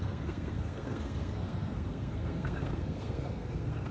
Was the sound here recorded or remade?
remade